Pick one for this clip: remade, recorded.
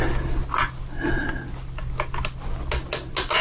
recorded